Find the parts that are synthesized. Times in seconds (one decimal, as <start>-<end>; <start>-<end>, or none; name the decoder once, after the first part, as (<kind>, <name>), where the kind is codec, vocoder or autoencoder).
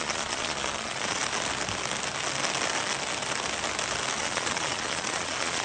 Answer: 0.0-1.2 (vocoder, Vocos); 4.2-5.6